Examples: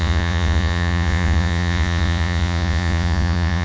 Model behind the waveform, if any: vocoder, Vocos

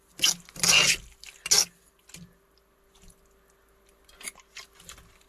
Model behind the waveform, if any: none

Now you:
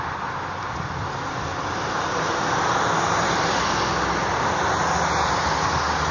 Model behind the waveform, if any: none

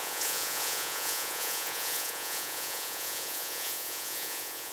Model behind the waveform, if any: vocoder, Vocos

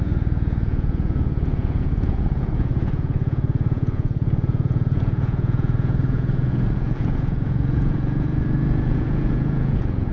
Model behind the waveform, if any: vocoder, Vocos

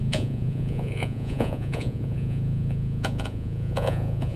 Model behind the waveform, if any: vocoder, Vocos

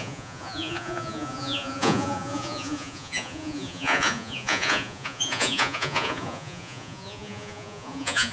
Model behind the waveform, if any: vocoder, Vocos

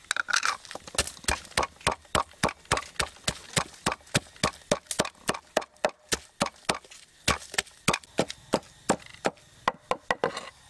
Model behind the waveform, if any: none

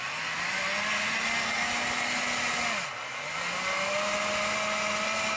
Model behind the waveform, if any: none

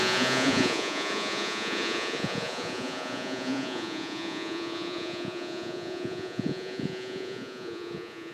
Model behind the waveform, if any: vocoder, Vocos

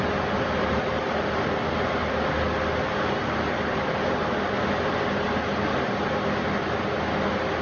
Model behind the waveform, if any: none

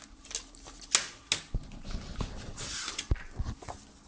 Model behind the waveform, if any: none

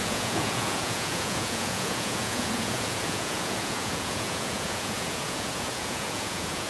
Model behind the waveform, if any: vocoder, Vocos